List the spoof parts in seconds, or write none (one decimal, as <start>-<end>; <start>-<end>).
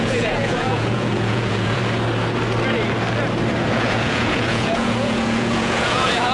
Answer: 0.0-1.8; 3.7-6.3